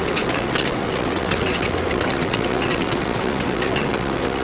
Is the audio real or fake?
fake